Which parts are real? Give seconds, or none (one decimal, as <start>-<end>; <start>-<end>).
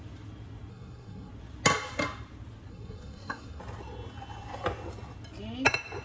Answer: 0.0-0.7; 1.3-2.7; 3.6-6.0